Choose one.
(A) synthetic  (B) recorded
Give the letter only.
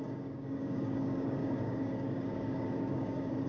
A